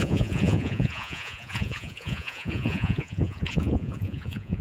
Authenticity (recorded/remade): remade